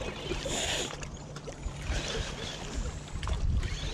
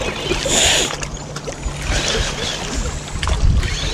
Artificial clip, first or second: first